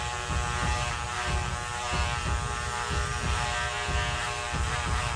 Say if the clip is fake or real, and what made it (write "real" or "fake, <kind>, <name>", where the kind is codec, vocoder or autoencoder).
real